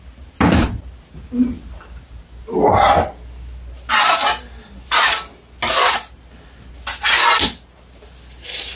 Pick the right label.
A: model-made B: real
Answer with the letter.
B